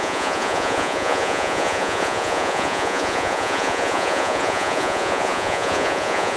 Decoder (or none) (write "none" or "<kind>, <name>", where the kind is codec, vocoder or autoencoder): vocoder, Vocos